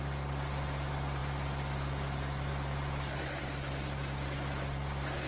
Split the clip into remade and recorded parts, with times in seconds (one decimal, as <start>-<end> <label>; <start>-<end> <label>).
0.0-5.3 recorded